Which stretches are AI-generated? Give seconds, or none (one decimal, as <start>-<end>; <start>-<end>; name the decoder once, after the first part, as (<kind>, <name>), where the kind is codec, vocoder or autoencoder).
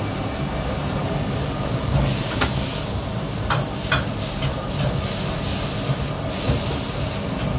1.0-3.1 (codec, DAC)